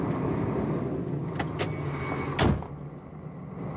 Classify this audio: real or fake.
real